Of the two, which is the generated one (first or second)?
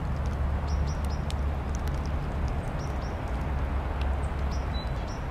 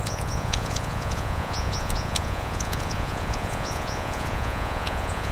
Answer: second